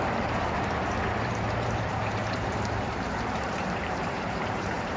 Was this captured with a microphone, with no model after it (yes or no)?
no